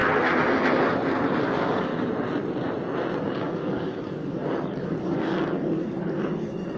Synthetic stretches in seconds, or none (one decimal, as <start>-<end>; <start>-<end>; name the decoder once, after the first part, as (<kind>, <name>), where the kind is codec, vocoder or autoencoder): 1.4-1.9 (codec, DAC); 3.2-6.8

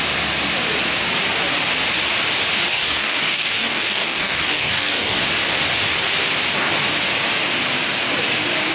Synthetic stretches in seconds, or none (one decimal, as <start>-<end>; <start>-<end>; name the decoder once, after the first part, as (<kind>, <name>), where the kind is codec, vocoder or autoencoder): 2.7-5.2 (codec, DAC)

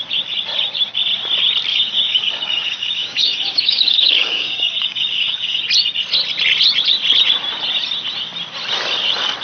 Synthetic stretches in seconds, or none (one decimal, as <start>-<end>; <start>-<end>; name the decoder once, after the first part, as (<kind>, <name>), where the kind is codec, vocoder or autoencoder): 1.7-5.6 (codec, DAC)

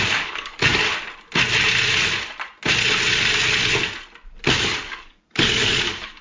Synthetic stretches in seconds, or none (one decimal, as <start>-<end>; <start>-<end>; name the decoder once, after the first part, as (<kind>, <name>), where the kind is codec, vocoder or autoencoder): 0.0-0.9 (codec, DAC); 4.6-6.2

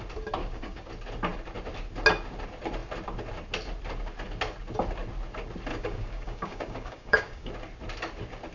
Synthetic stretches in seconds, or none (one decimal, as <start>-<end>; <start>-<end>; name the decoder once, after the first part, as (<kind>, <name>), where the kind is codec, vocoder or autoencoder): 0.4-0.9 (codec, DAC); 5.7-7.5

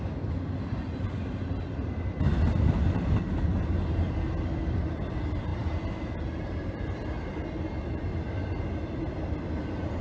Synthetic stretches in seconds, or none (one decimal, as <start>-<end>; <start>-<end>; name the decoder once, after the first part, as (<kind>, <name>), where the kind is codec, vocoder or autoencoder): none